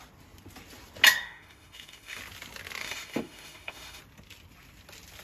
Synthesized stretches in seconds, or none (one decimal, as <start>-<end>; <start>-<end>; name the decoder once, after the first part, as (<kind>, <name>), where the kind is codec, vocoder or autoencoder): 1.1-2.2 (autoencoder, DAC-VAE); 2.8-4.0